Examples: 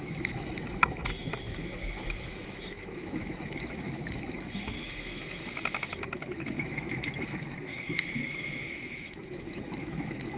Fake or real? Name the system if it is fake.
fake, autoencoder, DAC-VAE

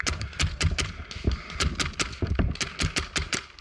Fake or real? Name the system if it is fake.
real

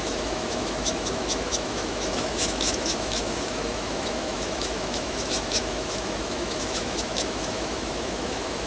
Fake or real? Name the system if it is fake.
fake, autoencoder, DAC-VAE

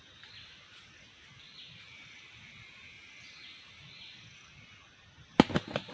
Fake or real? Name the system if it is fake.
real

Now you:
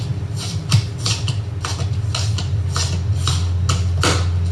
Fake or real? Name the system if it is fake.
real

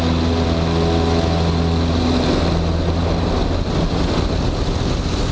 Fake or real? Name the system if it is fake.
real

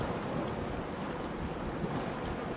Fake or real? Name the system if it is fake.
real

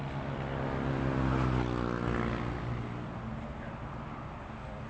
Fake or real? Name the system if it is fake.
real